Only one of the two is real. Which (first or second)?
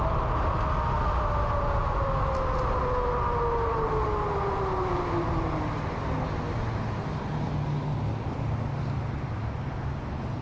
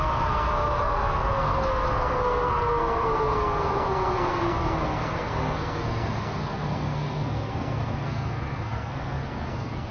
first